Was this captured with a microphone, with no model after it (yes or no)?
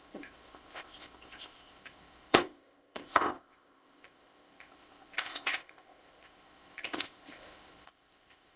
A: no